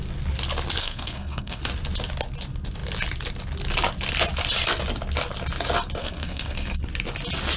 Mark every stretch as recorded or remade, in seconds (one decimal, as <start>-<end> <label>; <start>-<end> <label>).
0.0-0.8 recorded; 0.8-1.6 remade; 1.6-6.0 recorded; 6.0-6.8 remade; 6.8-7.6 recorded